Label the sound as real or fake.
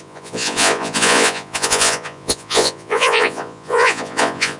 fake